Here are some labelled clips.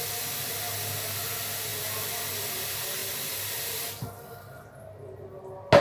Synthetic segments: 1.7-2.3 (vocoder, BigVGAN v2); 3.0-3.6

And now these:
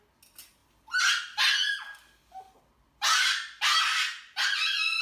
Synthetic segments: none

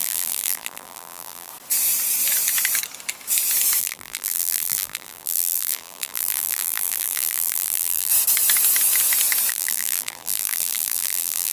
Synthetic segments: 0.0-1.5 (vocoder, BigVGAN v2); 3.8-8.1; 9.5-11.5

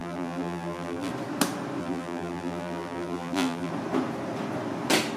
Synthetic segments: 0.0-1.1 (vocoder, BigVGAN v2); 1.8-3.7

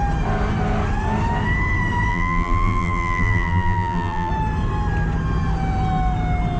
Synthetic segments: 2.1-4.3 (vocoder, BigVGAN v2)

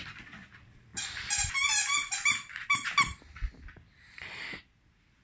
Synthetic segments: 2.7-3.2 (vocoder, BigVGAN v2)